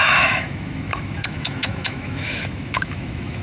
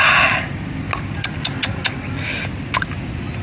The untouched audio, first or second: second